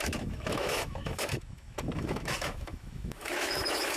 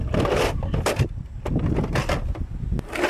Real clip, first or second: second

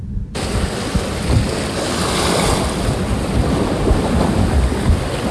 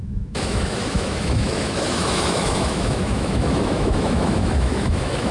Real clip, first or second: first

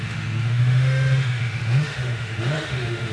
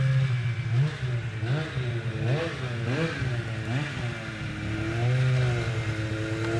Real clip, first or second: second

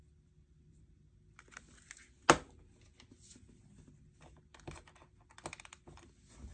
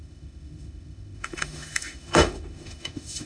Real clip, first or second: first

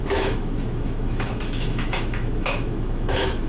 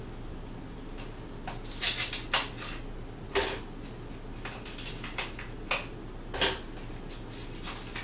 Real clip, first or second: second